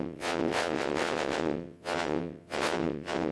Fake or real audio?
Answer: fake